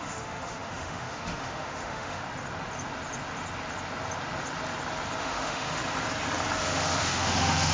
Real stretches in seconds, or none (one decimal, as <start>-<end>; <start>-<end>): 2.2-5.2; 5.8-6.6